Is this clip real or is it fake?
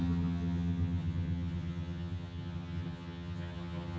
fake